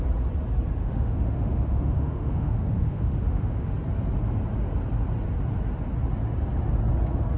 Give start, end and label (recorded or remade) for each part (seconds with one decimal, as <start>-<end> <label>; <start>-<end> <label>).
0.0-0.8 recorded; 0.8-3.7 remade; 3.7-7.4 recorded